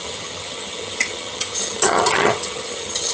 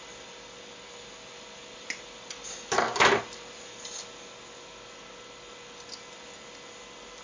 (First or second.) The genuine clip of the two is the second